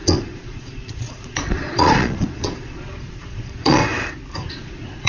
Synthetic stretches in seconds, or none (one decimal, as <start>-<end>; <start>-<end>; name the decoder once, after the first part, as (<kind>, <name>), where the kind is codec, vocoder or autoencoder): 0.0-3.8 (vocoder, Vocos); 4.5-5.1

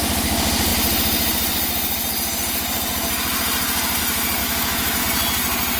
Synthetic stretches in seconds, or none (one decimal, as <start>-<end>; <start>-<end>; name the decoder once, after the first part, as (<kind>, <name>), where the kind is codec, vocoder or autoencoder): 4.4-5.0 (autoencoder, DAC-VAE)

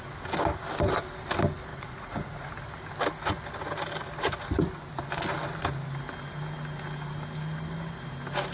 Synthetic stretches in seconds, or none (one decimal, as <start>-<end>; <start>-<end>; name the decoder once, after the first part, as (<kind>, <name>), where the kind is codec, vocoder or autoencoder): 1.7-2.5 (vocoder, Vocos)

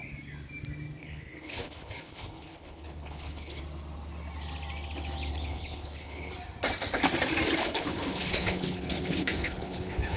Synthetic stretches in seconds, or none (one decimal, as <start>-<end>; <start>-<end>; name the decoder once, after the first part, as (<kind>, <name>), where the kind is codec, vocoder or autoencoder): 1.0-3.6 (codec, HILCodec); 5.3-6.3; 7.6-10.2

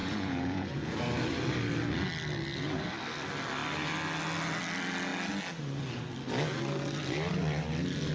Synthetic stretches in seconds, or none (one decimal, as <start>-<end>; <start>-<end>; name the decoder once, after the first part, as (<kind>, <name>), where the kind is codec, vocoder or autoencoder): 0.0-1.0 (vocoder, Vocos)